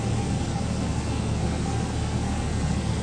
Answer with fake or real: fake